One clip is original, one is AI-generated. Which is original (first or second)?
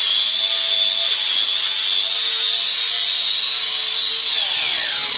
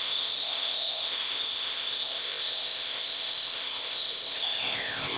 first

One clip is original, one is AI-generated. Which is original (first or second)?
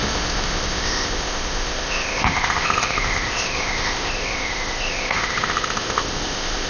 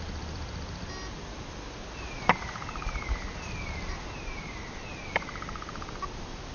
second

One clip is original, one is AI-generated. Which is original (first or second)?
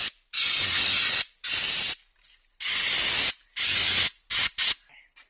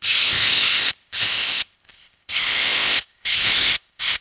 first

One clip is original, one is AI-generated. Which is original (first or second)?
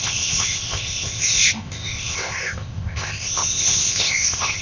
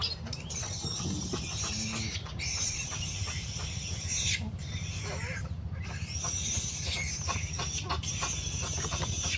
second